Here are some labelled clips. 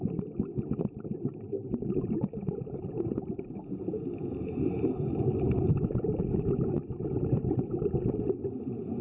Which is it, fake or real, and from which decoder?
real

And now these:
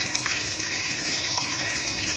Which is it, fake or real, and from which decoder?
fake, codec, SNAC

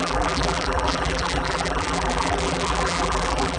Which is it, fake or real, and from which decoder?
fake, vocoder, BigVGAN v2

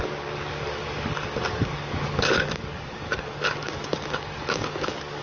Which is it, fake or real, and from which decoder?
fake, codec, DAC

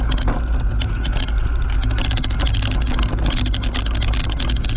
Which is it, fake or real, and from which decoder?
real